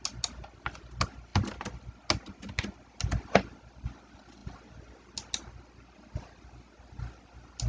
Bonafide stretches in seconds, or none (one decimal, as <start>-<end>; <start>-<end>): 0.0-7.7